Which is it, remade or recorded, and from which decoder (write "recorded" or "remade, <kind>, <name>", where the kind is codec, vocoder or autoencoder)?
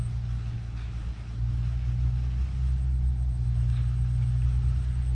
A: recorded